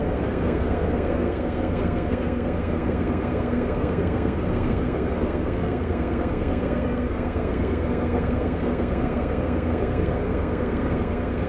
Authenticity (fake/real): fake